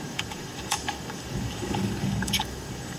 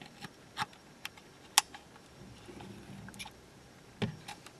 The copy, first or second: first